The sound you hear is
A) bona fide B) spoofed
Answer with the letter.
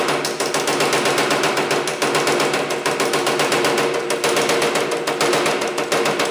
A